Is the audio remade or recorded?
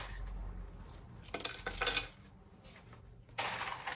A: recorded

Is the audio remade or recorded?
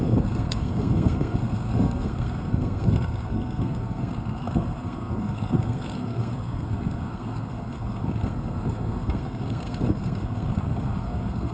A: remade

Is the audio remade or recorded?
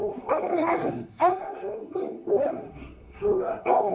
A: remade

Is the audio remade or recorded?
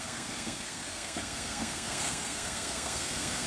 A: remade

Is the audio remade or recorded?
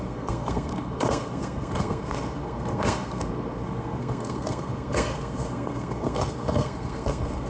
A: remade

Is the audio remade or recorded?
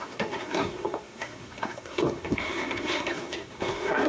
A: remade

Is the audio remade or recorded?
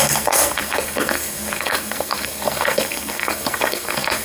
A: remade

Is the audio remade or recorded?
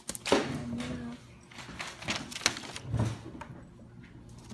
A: recorded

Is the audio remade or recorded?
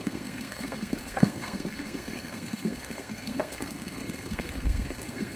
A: remade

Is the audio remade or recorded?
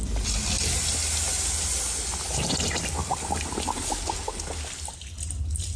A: recorded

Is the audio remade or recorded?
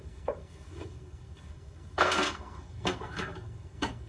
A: remade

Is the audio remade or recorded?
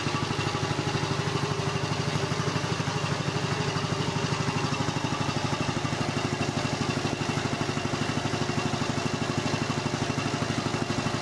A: recorded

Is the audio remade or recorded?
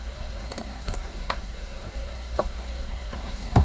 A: remade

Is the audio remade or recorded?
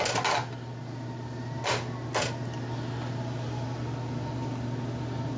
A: recorded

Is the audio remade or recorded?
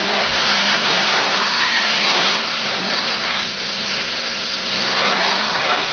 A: remade